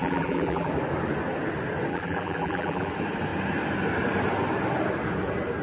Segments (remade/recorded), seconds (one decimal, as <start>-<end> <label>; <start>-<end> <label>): 0.0-0.7 remade; 0.7-1.9 recorded; 1.9-2.9 remade; 2.9-5.6 recorded

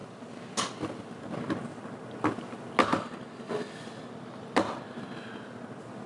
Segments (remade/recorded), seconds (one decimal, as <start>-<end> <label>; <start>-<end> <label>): 0.0-6.1 recorded